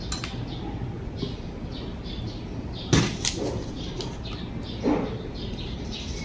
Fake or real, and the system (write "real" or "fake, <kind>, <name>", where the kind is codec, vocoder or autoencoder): real